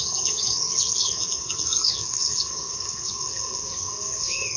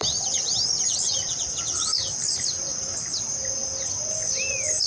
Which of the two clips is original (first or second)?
second